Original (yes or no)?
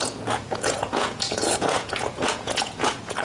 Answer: no